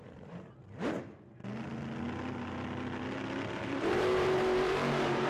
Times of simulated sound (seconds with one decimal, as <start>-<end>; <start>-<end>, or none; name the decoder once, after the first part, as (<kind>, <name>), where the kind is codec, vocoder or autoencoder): 0.0-1.4 (vocoder, BigVGAN v2); 3.6-5.3